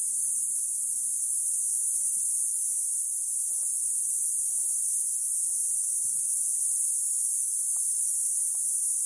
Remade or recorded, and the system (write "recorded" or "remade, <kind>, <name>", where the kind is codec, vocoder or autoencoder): recorded